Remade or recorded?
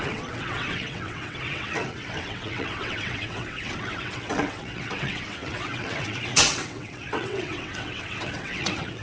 remade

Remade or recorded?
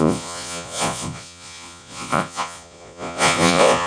remade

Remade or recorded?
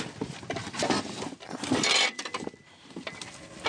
recorded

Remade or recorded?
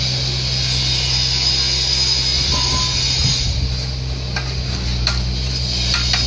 recorded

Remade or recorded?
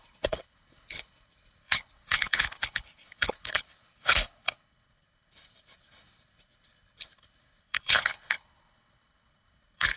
remade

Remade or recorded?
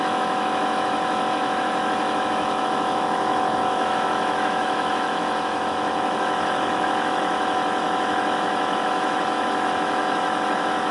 remade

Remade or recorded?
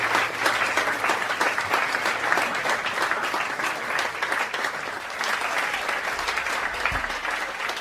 recorded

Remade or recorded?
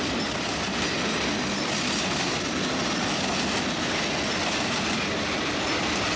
recorded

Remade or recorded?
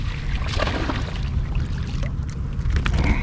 recorded